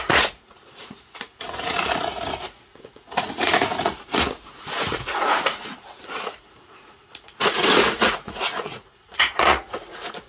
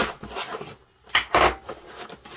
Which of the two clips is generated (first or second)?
first